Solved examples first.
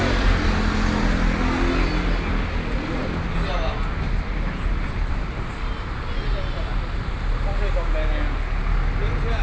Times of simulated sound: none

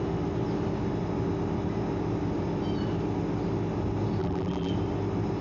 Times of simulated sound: 4.2-4.7 (vocoder, BigVGAN v2)

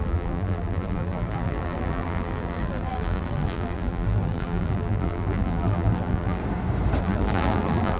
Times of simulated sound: 0.0-6.4 (vocoder, BigVGAN v2); 7.0-8.0

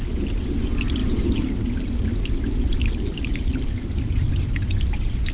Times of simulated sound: 1.0-1.6 (vocoder, BigVGAN v2); 2.7-4.3

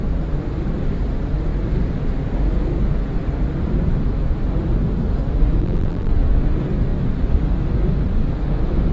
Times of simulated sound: 5.6-6.1 (vocoder, BigVGAN v2)

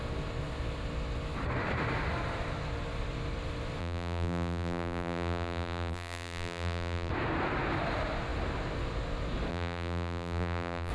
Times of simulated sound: 3.8-7.1 (vocoder, BigVGAN v2); 9.5-10.9

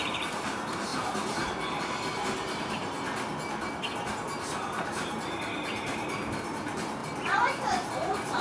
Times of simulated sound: 0.0-2.8 (vocoder, BigVGAN v2); 4.1-7.0; 7.9-8.4